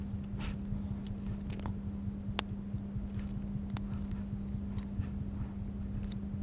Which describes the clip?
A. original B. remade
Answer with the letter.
A